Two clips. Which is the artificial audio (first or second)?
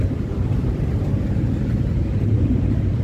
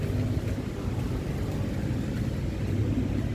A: first